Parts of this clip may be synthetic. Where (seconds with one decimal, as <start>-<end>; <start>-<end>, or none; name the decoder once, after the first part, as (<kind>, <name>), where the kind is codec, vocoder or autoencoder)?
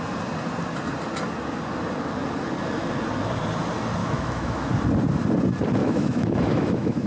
4.0-4.7 (autoencoder, DAC-VAE); 5.8-7.1